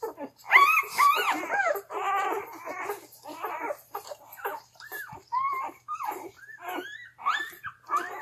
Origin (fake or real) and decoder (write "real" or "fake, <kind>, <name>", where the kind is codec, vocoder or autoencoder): fake, vocoder, BigVGAN v2